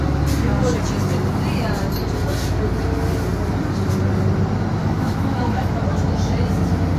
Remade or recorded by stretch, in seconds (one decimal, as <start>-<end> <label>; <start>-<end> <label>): 0.0-4.8 recorded; 4.8-5.8 remade; 5.8-7.0 recorded